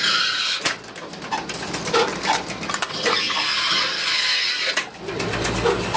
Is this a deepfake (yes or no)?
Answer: no